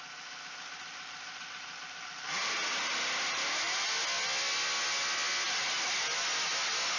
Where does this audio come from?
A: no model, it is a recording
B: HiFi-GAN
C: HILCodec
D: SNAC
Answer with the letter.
A